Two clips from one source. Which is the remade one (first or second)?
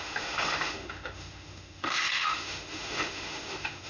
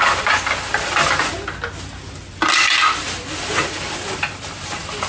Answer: first